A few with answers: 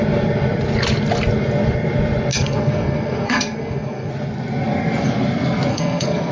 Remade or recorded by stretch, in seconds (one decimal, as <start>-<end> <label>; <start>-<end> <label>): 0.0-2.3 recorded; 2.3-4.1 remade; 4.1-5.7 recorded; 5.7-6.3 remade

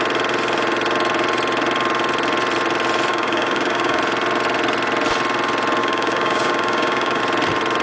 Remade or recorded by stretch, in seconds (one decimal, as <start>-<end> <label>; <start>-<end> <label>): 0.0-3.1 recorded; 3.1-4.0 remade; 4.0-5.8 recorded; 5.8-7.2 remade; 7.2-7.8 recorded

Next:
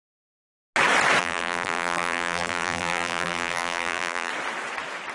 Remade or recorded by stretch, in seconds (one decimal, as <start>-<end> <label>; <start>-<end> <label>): 0.0-1.2 recorded; 1.2-4.3 remade; 4.3-5.1 recorded

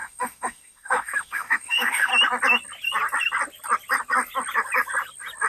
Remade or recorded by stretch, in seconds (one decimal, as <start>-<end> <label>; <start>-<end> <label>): 0.0-2.1 remade; 2.1-5.5 recorded

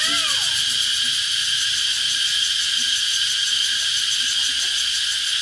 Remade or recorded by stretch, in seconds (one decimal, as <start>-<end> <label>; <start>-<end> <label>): 0.0-0.9 recorded; 0.9-4.1 remade; 4.1-5.4 recorded